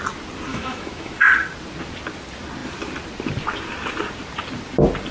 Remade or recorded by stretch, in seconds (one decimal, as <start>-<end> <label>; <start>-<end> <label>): 0.0-0.5 recorded; 0.5-1.3 remade; 1.3-5.1 recorded

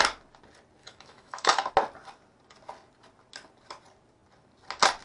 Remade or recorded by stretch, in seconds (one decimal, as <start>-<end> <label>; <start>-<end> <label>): 0.0-0.8 recorded; 0.8-1.7 remade; 1.7-5.0 recorded

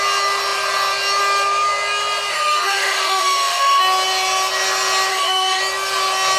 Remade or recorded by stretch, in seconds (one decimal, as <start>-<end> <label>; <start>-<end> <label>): 0.0-2.3 recorded; 2.3-3.8 remade; 3.8-5.1 recorded; 5.1-5.6 remade; 5.6-6.4 recorded

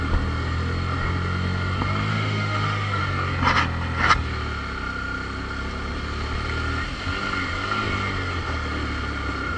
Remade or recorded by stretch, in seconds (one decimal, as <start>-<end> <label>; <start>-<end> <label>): 0.0-2.1 recorded; 2.1-3.0 remade; 3.0-9.6 recorded

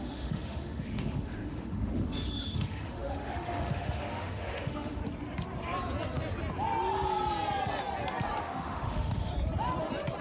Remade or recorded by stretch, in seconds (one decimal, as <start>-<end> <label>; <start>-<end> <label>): 0.0-5.0 remade; 5.0-8.4 recorded; 8.4-9.3 remade; 9.3-10.2 recorded